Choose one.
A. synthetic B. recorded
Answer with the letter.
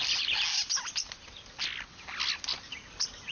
B